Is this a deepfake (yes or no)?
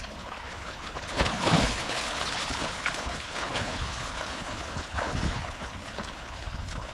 yes